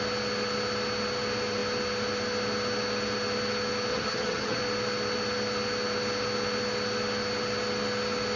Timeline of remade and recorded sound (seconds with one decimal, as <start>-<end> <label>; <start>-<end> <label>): 0.0-3.9 recorded; 3.9-4.6 remade; 4.6-8.4 recorded